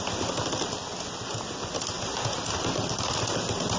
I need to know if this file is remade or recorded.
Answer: recorded